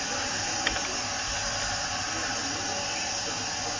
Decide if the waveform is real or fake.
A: real